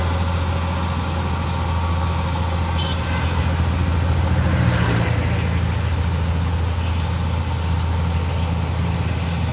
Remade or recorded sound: recorded